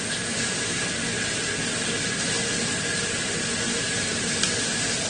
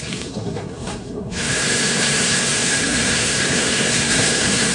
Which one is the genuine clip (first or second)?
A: first